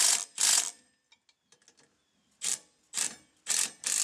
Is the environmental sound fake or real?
real